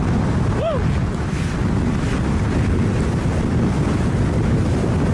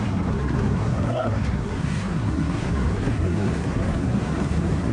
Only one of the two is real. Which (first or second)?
first